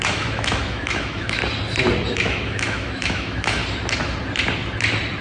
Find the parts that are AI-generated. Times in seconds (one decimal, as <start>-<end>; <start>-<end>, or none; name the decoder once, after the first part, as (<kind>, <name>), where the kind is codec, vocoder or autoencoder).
0.0-1.4 (autoencoder, DAC-VAE); 2.1-3.6